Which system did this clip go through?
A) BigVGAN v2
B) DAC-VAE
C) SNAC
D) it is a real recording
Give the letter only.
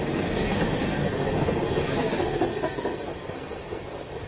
C